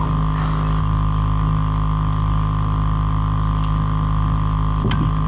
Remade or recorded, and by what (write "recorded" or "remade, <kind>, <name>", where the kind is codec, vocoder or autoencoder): recorded